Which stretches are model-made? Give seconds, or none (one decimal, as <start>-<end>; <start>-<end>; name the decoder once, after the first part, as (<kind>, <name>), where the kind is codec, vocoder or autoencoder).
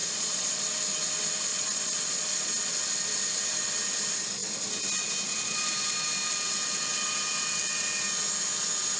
0.0-0.6 (vocoder, Vocos); 1.5-2.8